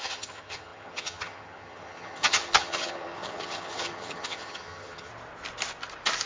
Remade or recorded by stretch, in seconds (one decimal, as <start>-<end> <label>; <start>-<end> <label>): 0.0-5.1 remade; 5.1-6.3 recorded